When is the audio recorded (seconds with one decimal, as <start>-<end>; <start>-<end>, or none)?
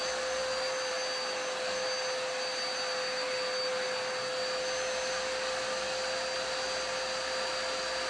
0.0-8.1